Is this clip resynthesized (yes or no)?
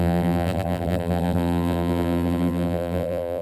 yes